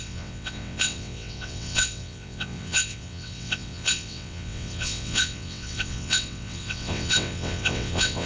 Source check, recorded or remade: remade